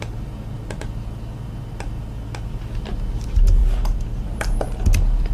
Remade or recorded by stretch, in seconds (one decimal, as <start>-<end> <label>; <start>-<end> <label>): 0.0-3.6 recorded; 3.6-4.8 remade; 4.8-5.3 recorded